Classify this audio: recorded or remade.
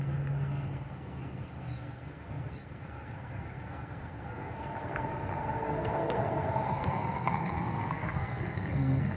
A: remade